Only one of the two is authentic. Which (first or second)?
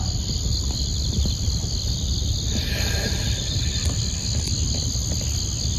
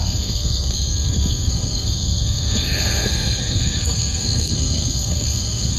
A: first